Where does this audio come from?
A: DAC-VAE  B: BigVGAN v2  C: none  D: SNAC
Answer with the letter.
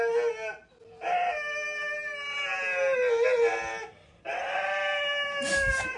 C